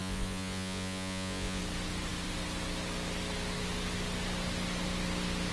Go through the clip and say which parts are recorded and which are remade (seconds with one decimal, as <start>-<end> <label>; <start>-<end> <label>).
0.0-1.6 remade; 1.6-5.5 recorded